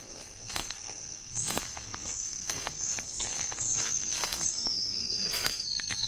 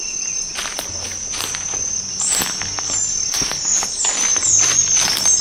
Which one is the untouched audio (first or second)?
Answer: second